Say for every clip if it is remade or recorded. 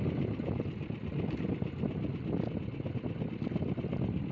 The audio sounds recorded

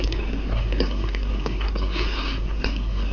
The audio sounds remade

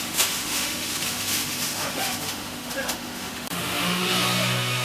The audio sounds remade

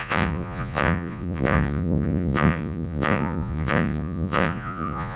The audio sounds remade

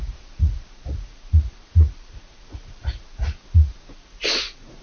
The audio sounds remade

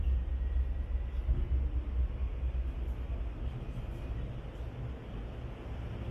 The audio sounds recorded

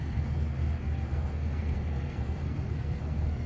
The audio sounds remade